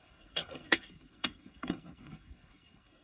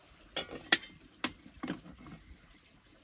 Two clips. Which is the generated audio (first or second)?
first